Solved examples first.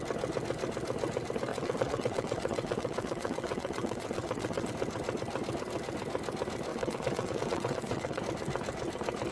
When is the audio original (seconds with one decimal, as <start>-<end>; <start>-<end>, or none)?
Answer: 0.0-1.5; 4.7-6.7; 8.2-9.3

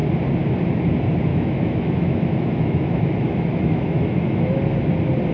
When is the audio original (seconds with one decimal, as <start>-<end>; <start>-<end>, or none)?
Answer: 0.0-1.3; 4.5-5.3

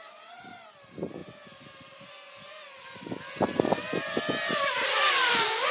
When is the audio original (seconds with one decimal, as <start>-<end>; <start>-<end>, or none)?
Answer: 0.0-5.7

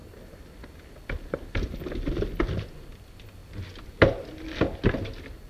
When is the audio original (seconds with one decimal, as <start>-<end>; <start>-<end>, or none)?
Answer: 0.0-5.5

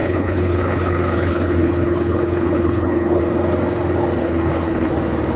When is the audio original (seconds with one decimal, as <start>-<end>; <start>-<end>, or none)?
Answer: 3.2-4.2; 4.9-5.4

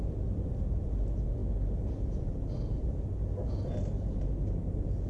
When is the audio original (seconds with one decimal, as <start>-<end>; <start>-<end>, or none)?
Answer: 0.0-5.1

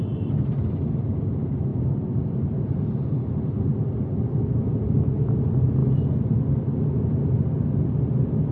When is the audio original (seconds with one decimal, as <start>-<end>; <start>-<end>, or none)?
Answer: 0.0-8.5